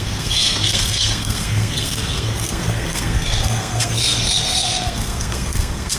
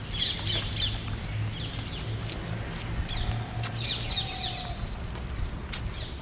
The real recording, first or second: second